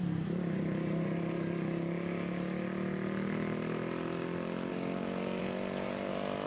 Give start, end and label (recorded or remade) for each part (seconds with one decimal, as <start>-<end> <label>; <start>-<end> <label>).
0.0-4.7 recorded; 4.7-5.4 remade; 5.4-6.5 recorded